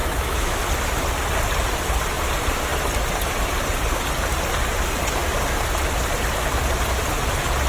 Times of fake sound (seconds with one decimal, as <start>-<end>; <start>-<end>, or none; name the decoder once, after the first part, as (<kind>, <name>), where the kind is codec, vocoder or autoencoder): 0.0-0.6 (autoencoder, DAC-VAE)